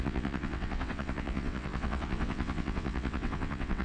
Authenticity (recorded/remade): remade